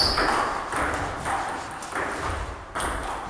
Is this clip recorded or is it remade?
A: recorded